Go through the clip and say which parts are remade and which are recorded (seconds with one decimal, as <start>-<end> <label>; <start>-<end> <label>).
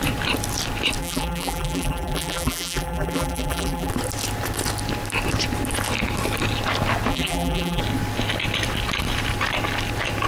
0.0-1.0 recorded; 1.0-3.9 remade; 3.9-7.1 recorded; 7.1-7.8 remade; 7.8-10.3 recorded